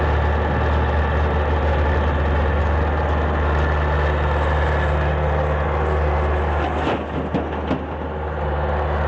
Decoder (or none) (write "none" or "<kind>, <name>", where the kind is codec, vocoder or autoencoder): none